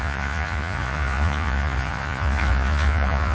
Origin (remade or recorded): remade